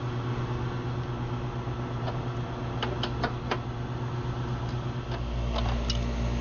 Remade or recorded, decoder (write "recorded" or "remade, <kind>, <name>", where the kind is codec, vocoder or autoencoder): recorded